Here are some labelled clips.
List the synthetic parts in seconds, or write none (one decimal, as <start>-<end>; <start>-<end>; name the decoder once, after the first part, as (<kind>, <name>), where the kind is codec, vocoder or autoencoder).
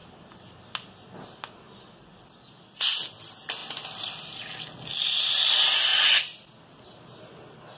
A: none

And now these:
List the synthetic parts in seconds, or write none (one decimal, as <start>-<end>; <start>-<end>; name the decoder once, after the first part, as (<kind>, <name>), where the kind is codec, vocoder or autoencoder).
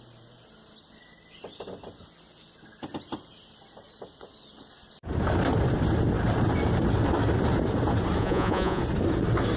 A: 8.2-8.8 (vocoder, Vocos)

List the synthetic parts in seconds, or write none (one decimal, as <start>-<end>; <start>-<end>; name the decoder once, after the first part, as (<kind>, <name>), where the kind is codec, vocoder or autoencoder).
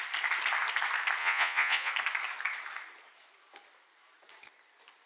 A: 1.2-1.9 (vocoder, Vocos)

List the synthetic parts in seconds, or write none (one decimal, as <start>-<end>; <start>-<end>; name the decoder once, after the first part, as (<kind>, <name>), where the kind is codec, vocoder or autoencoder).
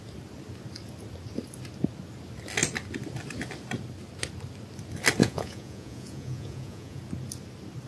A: 5.2-7.0 (vocoder, Vocos)